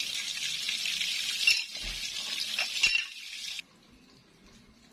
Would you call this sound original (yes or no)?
yes